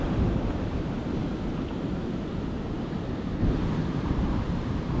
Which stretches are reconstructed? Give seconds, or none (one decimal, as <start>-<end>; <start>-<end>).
0.0-1.2; 3.8-5.0